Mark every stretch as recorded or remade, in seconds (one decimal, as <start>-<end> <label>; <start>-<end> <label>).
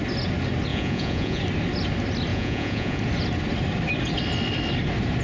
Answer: 0.0-0.7 recorded; 0.7-1.4 remade; 1.4-2.3 recorded; 2.3-3.0 remade; 3.0-5.2 recorded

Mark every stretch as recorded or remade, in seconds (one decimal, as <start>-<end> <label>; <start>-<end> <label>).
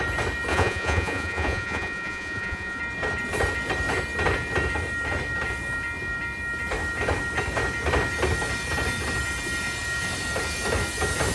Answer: 0.0-0.5 recorded; 0.5-2.8 remade; 2.8-11.3 recorded